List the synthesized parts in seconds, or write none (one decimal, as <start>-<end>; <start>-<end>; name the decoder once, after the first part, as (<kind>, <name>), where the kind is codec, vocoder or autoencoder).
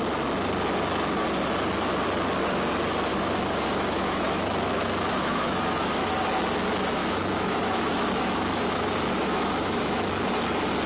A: 3.1-6.1 (autoencoder, DAC-VAE); 7.0-10.1